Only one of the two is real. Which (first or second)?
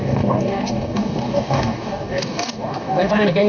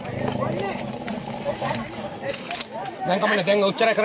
second